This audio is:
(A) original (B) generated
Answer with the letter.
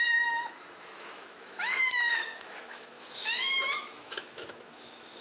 B